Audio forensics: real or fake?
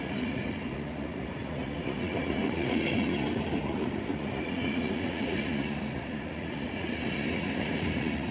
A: fake